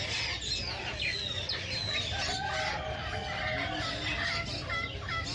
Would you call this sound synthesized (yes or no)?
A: no